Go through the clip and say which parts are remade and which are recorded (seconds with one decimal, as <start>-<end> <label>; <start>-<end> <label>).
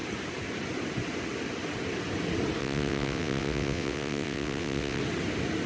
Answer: 0.0-2.6 recorded; 2.6-5.0 remade; 5.0-5.7 recorded